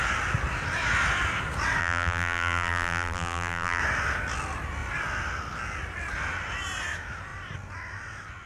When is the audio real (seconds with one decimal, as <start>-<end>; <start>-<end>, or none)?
0.0-1.8; 3.8-8.5